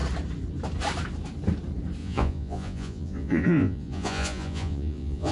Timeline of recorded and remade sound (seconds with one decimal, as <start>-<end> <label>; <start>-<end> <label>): 0.0-2.0 recorded; 2.0-5.3 remade